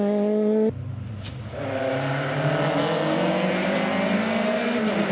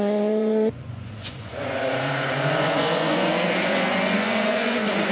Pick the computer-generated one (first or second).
second